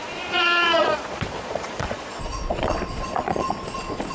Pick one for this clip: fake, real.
fake